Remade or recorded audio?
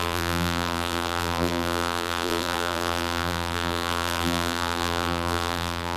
remade